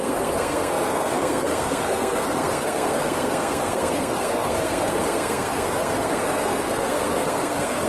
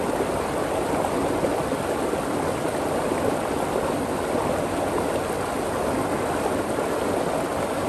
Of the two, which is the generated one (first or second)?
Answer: first